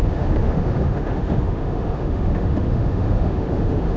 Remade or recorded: remade